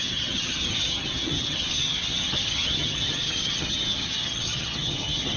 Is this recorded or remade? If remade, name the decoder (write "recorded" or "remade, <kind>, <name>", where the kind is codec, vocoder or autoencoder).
remade, vocoder, HiFi-GAN